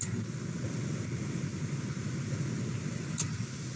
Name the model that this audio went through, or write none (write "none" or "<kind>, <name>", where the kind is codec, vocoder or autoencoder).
none